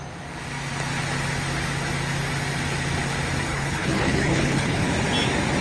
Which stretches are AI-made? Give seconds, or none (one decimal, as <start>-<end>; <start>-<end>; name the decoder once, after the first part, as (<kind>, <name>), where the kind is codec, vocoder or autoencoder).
3.5-4.9 (codec, HILCodec)